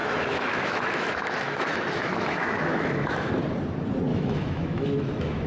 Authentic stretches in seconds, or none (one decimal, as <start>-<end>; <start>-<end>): 3.3-4.1